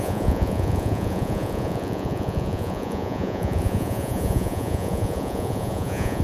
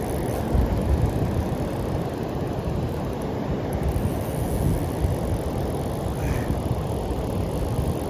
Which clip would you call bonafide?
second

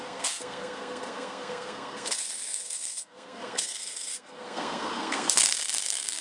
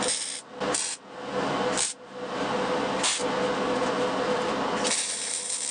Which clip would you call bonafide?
second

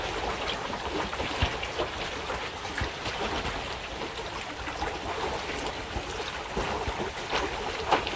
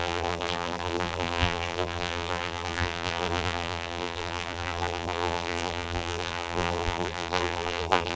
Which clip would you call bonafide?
first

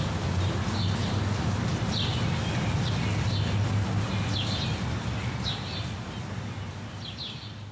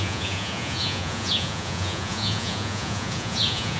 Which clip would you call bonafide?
first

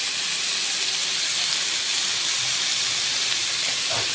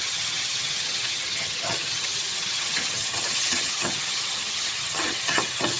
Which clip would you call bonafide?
first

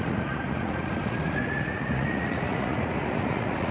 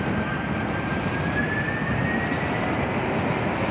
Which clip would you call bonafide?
second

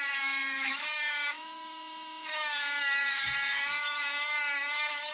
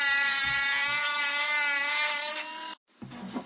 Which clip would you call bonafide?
second